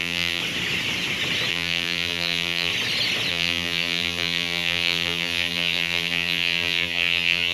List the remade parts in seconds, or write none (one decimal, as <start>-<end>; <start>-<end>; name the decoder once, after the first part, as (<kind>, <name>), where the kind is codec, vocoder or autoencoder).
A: 0.0-0.4 (vocoder, BigVGAN v2); 1.5-2.7; 3.3-7.5